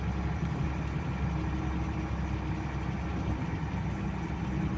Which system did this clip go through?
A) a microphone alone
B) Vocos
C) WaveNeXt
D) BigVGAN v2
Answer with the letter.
A